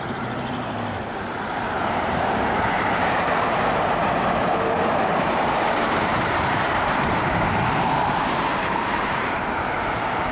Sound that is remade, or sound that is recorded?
remade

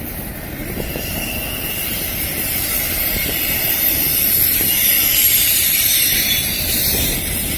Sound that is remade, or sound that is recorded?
remade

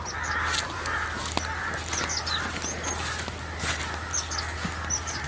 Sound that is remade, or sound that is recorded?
recorded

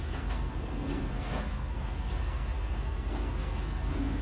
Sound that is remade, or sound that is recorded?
remade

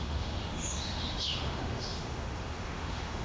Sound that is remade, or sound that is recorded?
remade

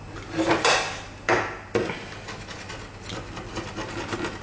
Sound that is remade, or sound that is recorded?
recorded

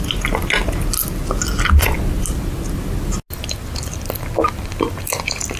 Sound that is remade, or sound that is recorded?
recorded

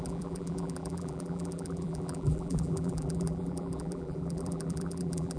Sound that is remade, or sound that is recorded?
remade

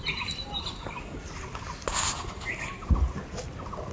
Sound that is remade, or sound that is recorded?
recorded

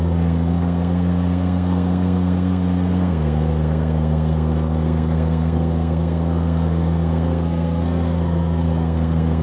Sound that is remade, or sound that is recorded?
remade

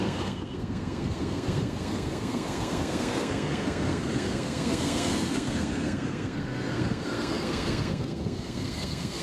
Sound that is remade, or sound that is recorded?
remade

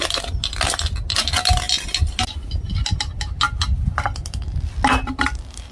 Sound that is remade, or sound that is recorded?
recorded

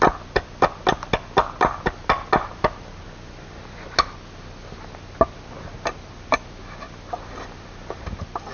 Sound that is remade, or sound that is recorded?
recorded